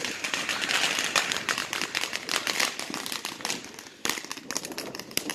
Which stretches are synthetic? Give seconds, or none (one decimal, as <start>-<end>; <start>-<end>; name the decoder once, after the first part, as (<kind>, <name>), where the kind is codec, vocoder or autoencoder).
1.6-3.5 (vocoder, BigVGAN v2)